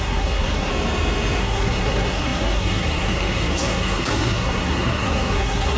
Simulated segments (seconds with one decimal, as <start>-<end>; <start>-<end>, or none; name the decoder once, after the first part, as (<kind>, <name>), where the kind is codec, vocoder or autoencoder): 0.0-0.7 (codec, SNAC); 1.4-5.8